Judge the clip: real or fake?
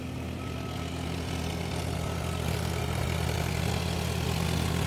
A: real